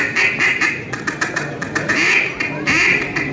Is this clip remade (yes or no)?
no